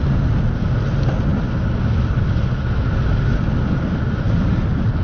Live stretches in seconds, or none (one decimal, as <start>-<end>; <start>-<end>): 0.0-5.0